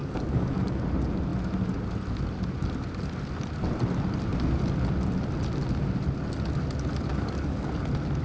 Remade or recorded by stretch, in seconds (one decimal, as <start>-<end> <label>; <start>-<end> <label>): 0.0-0.8 remade; 0.8-7.1 recorded; 7.1-7.7 remade; 7.7-8.2 recorded